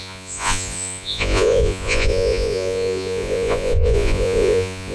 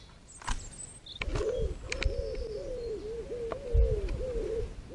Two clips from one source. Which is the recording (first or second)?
second